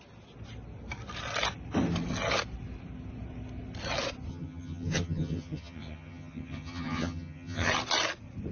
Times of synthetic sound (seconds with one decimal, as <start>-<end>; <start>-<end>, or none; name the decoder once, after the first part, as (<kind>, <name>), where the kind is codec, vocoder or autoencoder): 4.3-7.7 (vocoder, HiFi-GAN)